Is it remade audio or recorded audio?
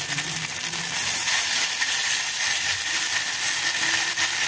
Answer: recorded